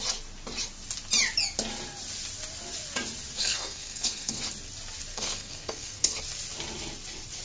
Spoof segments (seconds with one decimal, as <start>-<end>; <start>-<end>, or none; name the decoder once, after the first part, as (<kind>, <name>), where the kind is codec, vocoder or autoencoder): 3.4-4.4 (codec, SNAC); 5.1-6.2